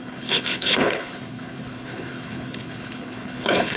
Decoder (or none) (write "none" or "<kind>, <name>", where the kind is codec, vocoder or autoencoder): codec, HILCodec